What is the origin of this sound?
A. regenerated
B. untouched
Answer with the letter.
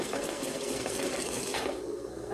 A